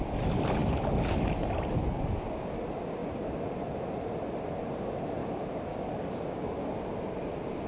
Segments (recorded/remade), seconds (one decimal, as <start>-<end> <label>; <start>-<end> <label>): 0.0-5.2 recorded; 5.2-6.8 remade; 6.8-7.7 recorded